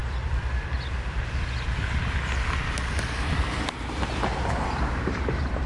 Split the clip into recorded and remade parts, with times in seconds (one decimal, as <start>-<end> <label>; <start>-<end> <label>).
0.0-3.4 recorded; 3.4-4.3 remade; 4.3-5.0 recorded; 5.0-5.7 remade